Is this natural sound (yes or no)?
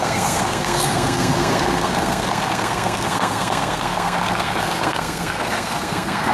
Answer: no